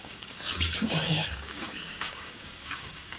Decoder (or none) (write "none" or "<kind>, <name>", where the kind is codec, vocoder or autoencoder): codec, DAC